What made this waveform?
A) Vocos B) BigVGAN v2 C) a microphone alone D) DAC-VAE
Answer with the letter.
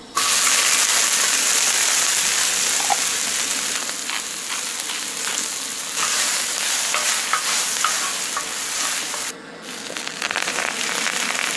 C